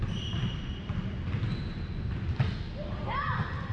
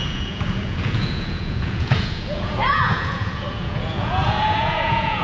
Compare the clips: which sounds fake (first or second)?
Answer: second